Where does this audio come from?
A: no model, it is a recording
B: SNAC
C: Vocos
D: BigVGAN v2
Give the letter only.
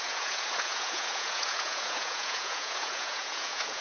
C